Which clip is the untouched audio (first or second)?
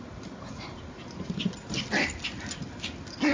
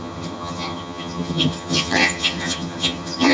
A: first